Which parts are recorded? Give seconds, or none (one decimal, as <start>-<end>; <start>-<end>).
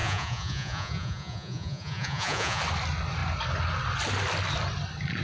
2.6-5.2